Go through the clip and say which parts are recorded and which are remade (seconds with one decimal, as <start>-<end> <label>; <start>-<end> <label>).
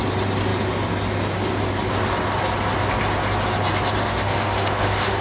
0.0-4.0 recorded; 4.0-5.2 remade